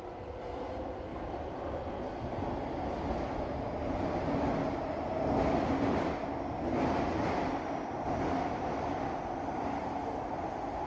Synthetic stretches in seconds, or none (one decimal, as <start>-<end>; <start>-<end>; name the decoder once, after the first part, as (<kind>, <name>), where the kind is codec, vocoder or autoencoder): none